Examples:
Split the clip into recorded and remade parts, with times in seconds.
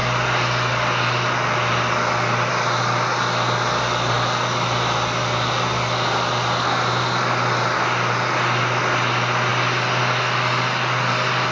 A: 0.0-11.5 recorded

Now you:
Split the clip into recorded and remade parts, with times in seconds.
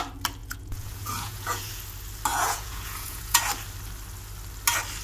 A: 0.0-0.4 recorded; 0.4-1.8 remade; 1.8-2.3 recorded; 2.3-3.4 remade; 3.4-5.0 recorded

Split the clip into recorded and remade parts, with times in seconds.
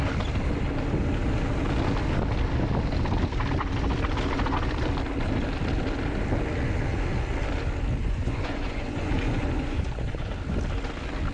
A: 0.0-8.0 recorded; 8.0-10.3 remade; 10.3-11.3 recorded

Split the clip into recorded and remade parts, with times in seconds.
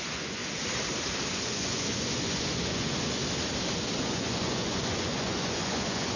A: 0.0-0.4 remade; 0.4-1.3 recorded; 1.3-3.2 remade; 3.2-4.0 recorded; 4.0-6.2 remade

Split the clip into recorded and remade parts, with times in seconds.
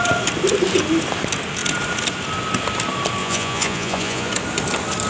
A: 0.0-3.2 recorded; 3.2-4.3 remade; 4.3-5.1 recorded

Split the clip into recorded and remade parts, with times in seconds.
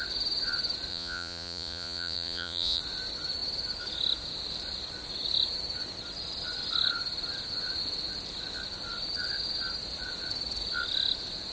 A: 0.0-0.9 recorded; 0.9-2.8 remade; 2.8-11.5 recorded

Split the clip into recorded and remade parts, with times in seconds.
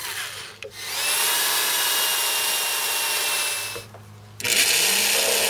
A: 0.0-5.5 recorded